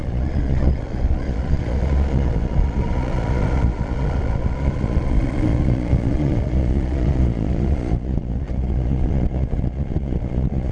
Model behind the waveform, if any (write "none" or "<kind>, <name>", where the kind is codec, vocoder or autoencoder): vocoder, Vocos